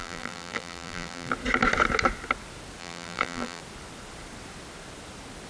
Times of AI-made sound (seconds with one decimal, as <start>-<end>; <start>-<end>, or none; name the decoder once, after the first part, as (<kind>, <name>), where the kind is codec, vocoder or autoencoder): 0.0-1.3 (vocoder, BigVGAN v2); 2.8-3.6